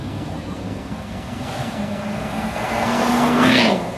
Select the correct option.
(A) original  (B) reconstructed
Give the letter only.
B